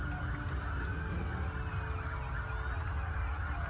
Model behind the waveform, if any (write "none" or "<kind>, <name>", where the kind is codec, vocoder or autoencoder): none